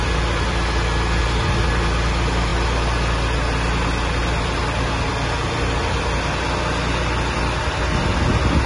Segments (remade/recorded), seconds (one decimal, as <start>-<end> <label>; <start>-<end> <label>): 0.0-8.7 recorded

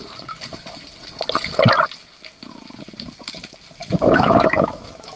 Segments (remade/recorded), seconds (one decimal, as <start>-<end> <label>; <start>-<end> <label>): 0.0-3.8 recorded; 3.8-5.2 remade

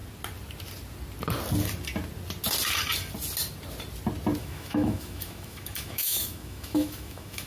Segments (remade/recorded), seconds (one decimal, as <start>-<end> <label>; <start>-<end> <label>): 0.0-4.4 recorded; 4.4-7.5 remade

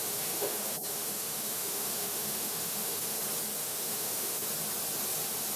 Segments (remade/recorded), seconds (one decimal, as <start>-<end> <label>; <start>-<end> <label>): 0.0-3.2 remade; 3.2-3.6 recorded; 3.6-4.5 remade; 4.5-5.6 recorded

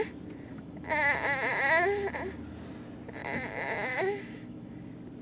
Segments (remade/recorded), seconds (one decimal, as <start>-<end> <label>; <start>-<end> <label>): 0.0-0.5 recorded; 0.5-1.5 remade; 1.5-3.2 recorded; 3.2-4.8 remade; 4.8-5.2 recorded

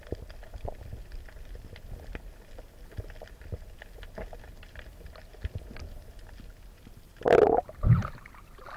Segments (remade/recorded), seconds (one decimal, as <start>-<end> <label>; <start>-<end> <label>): 0.0-8.8 recorded

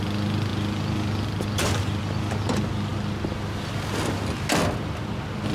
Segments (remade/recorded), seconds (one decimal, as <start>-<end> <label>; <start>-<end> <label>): 0.0-5.5 recorded